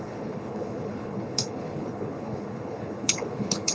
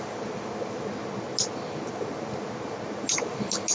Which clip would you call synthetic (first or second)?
first